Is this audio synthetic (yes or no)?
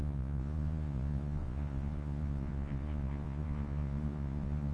yes